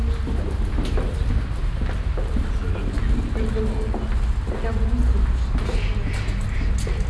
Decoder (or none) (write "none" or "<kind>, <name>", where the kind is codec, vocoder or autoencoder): none